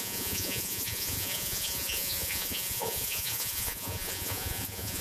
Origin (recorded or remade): remade